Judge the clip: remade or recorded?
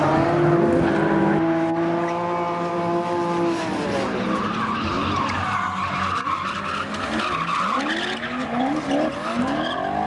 recorded